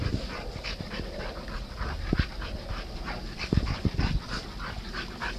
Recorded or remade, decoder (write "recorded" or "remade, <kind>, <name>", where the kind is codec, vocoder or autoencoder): recorded